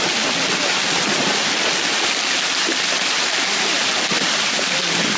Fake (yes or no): no